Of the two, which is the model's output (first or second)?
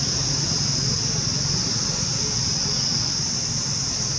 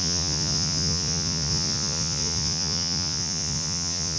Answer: second